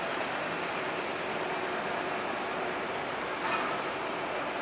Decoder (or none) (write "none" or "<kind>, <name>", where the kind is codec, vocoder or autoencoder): none